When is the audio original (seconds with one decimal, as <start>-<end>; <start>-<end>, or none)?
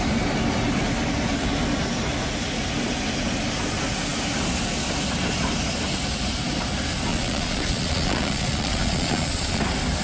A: 0.0-7.1; 9.6-10.0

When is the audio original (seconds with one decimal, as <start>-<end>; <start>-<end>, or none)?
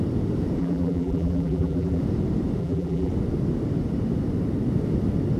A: 0.0-0.6; 2.0-2.6; 3.1-5.4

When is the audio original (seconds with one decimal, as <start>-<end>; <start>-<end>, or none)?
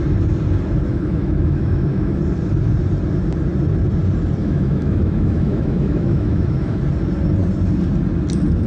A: 0.0-0.9; 2.2-4.4; 6.8-8.7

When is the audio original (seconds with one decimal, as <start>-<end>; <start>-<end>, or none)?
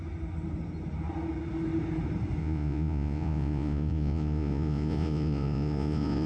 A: 0.0-2.4